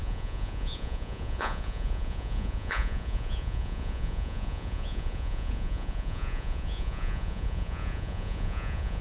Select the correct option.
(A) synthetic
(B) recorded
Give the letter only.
A